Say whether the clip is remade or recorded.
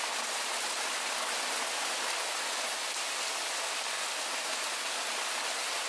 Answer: recorded